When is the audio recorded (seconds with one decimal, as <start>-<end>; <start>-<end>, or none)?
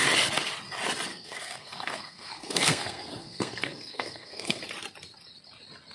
0.0-1.1; 4.6-5.9